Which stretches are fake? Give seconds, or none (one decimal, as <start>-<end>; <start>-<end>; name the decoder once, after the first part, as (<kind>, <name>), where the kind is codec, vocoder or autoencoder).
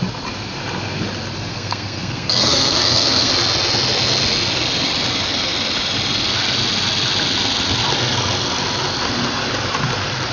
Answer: 1.5-3.3 (codec, SNAC)